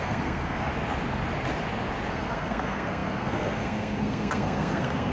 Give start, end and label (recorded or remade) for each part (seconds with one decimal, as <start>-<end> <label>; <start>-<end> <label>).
0.0-0.7 remade; 0.7-2.1 recorded; 2.1-5.1 remade